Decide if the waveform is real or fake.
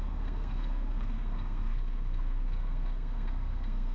fake